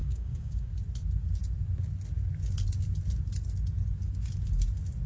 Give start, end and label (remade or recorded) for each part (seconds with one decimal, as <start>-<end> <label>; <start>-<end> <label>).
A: 0.0-0.7 remade; 0.7-5.1 recorded